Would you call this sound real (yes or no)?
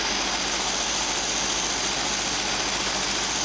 yes